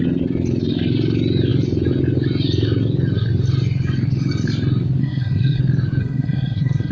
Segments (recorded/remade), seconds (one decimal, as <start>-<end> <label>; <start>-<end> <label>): 0.0-5.0 recorded; 5.0-5.6 remade; 5.6-6.0 recorded; 6.0-6.9 remade

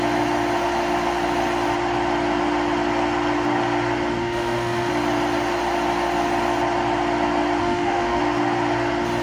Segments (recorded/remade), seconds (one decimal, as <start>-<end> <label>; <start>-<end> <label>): 0.0-4.2 recorded; 4.2-4.9 remade; 4.9-7.6 recorded; 7.6-8.2 remade; 8.2-9.2 recorded